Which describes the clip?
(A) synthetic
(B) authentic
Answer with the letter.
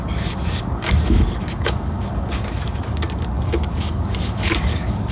A